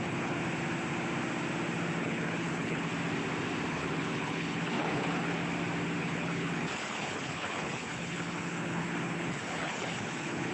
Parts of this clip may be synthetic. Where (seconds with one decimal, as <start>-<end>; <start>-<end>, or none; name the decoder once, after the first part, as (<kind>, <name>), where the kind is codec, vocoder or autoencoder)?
0.0-0.4 (codec, HILCodec); 2.0-2.9; 3.7-5.4; 6.0-10.5

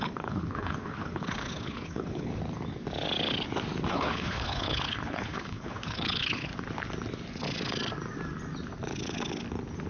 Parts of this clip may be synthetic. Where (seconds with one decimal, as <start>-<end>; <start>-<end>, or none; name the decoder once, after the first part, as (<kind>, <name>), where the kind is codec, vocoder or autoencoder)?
0.0-2.3 (codec, HILCodec); 3.9-6.5